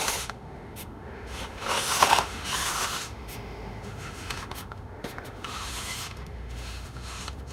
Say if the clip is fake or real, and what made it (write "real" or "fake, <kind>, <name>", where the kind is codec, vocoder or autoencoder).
fake, autoencoder, DAC-VAE